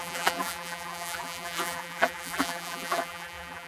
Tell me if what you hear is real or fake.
fake